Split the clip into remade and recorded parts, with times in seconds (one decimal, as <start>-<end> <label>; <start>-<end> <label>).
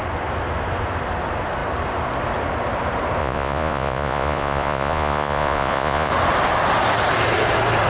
0.0-3.2 recorded; 3.2-6.1 remade; 6.1-7.9 recorded